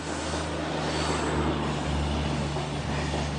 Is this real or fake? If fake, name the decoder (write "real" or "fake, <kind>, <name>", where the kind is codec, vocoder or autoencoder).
real